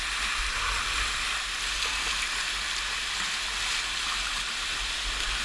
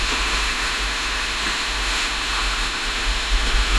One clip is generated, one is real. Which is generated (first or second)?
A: second